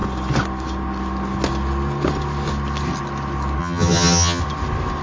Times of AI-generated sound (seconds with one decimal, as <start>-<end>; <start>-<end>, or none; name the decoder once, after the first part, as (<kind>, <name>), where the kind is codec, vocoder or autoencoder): 3.6-4.4 (vocoder, HiFi-GAN)